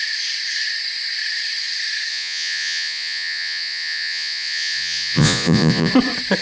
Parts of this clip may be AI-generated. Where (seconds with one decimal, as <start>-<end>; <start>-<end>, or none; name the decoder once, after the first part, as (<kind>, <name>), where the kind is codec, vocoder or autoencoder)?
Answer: 2.1-5.9 (vocoder, Vocos)